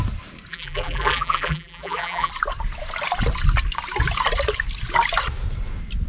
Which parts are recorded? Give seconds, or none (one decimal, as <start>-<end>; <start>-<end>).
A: 0.0-0.5; 2.3-6.1